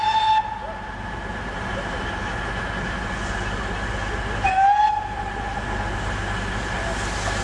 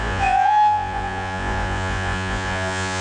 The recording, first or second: first